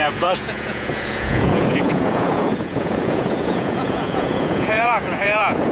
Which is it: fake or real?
fake